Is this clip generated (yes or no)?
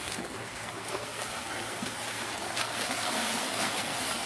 yes